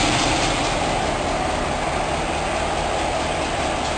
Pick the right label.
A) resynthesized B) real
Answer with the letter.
B